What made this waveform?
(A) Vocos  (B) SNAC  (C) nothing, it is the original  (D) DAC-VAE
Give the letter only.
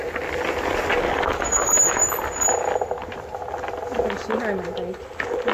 C